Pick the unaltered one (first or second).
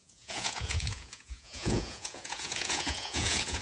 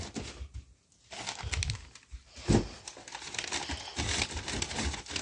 second